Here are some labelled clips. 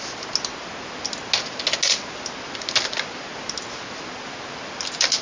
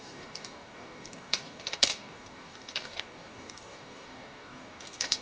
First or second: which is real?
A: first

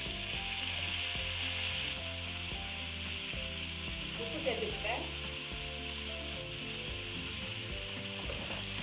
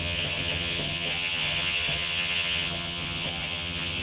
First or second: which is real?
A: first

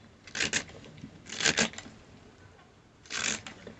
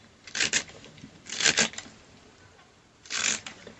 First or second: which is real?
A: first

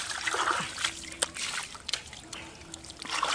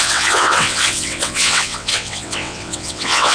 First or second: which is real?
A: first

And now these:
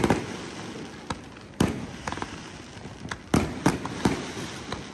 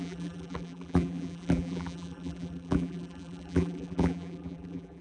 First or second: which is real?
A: first